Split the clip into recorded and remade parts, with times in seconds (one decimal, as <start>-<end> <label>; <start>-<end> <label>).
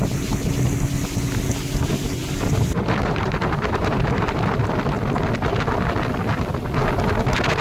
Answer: 0.0-2.2 recorded; 2.2-4.4 remade; 4.4-7.6 recorded